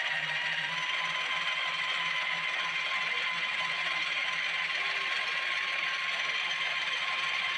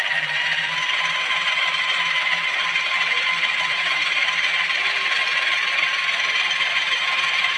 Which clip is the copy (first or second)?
second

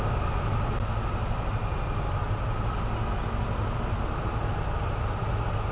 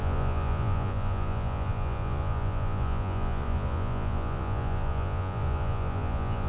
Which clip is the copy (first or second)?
second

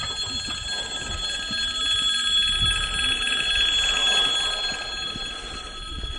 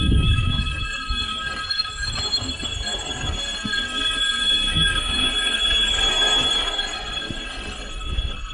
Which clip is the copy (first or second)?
second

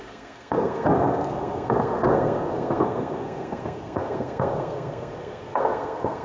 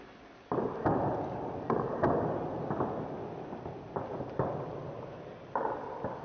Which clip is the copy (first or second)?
first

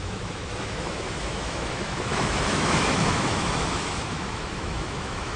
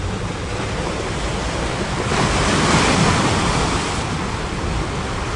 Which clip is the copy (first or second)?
first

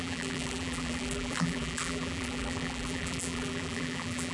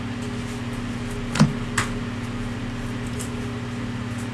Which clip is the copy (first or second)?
first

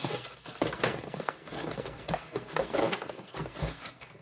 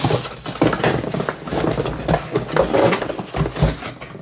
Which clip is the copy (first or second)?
first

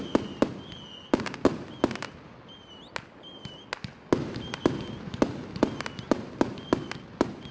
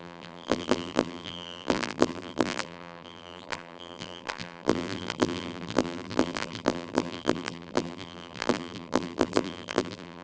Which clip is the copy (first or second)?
second